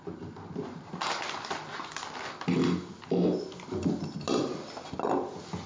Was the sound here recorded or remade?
recorded